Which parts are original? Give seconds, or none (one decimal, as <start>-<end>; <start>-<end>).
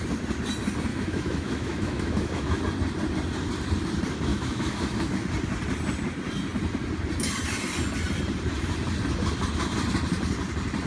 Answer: 0.0-0.9; 2.6-4.3; 5.1-10.9